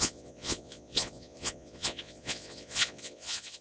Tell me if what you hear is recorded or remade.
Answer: remade